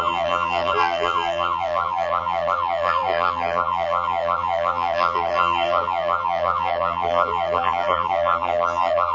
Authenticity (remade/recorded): remade